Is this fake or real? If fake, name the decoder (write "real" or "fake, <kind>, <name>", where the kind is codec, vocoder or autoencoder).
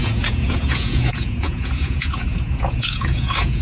fake, vocoder, Vocos